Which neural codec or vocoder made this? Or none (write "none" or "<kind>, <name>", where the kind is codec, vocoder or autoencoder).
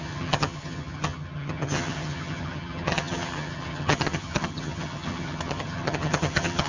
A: vocoder, HiFi-GAN